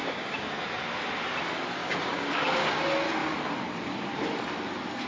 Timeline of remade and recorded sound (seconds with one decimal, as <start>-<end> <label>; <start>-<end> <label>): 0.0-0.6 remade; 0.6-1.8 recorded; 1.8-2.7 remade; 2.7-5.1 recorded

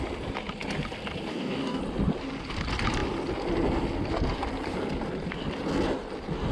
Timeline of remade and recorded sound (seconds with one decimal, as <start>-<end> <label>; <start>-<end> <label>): 0.0-1.3 recorded; 1.3-1.8 remade; 1.8-6.5 recorded

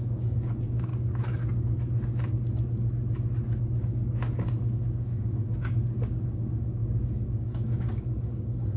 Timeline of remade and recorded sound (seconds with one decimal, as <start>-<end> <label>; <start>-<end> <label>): 0.0-0.9 remade; 0.9-4.7 recorded; 4.7-8.8 remade

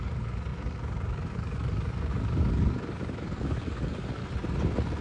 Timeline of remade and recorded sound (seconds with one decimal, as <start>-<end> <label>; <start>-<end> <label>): 0.0-4.2 remade; 4.2-5.0 recorded